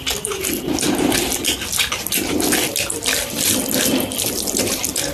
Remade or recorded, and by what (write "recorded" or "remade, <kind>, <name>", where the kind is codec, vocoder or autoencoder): recorded